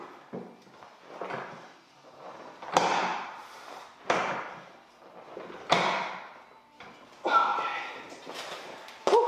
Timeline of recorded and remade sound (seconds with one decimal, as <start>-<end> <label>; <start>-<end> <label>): 0.0-3.1 recorded; 3.1-4.0 remade; 4.0-7.5 recorded; 7.5-8.9 remade; 8.9-9.3 recorded